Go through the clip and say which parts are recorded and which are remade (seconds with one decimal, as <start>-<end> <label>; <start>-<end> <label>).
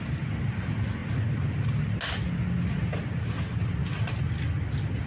0.0-5.1 recorded